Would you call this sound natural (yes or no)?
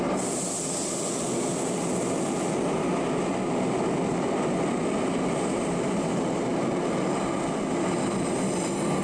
yes